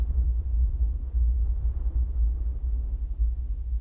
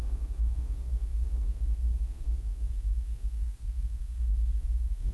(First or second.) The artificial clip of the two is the second